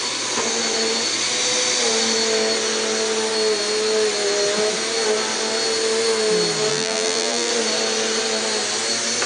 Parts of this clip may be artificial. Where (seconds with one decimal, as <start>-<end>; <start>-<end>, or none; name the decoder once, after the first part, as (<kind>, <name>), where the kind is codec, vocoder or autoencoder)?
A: 6.7-7.5 (vocoder, BigVGAN v2)